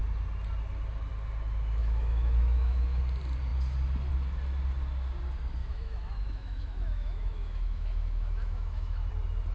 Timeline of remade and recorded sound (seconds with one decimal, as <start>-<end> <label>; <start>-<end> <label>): 0.0-1.8 recorded; 1.8-3.0 remade; 3.0-5.6 recorded; 5.6-9.1 remade; 9.1-9.5 recorded